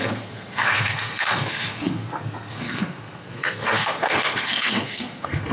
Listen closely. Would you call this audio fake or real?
fake